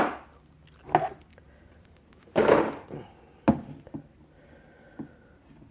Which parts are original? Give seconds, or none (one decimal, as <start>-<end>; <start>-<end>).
0.0-1.3; 2.6-5.7

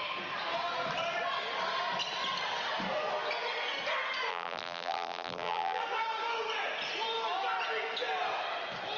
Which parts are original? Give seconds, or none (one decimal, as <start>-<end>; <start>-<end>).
0.0-4.3; 5.8-9.0

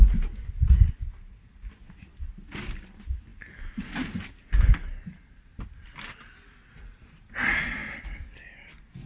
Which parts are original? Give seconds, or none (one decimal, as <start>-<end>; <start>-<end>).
0.0-3.3; 4.4-9.1

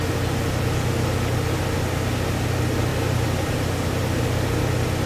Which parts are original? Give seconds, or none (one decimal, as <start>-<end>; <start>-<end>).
0.0-2.9; 3.5-5.1

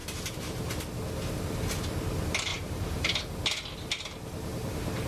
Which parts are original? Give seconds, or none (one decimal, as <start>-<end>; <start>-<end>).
0.8-2.5; 3.2-5.1

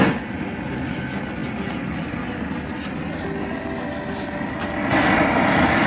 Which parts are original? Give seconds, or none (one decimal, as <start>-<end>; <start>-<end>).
0.0-5.9

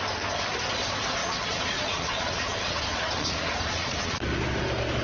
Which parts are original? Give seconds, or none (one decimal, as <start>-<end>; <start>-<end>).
0.0-1.2; 4.2-5.0